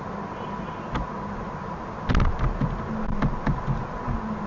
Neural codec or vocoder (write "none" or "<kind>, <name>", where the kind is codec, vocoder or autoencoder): none